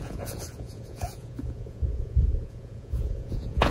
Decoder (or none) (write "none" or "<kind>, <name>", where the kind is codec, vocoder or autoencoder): vocoder, Vocos